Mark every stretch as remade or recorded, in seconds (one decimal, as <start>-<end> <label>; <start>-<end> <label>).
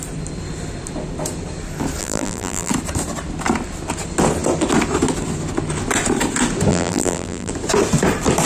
0.0-2.0 recorded; 2.0-2.7 remade; 2.7-6.7 recorded; 6.7-7.5 remade; 7.5-8.5 recorded